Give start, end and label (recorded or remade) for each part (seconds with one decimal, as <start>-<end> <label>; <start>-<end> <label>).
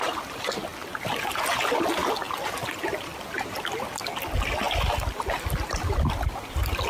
0.0-6.9 recorded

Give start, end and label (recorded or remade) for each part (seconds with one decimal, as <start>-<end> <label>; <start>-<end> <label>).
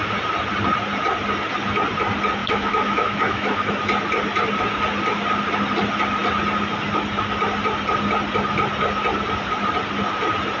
0.0-2.4 recorded; 2.4-3.8 remade; 3.8-10.6 recorded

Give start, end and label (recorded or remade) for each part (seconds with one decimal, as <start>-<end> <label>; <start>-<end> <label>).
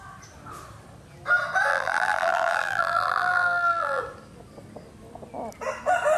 0.0-1.7 recorded; 1.7-4.0 remade; 4.0-6.2 recorded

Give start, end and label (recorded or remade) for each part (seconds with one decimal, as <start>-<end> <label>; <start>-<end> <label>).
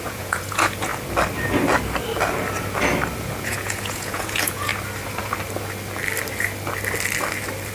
0.0-0.9 remade; 0.9-3.2 recorded; 3.2-4.7 remade; 4.7-7.7 recorded